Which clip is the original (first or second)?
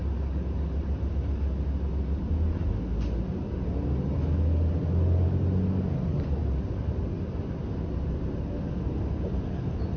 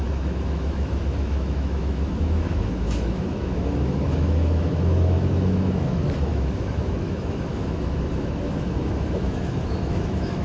first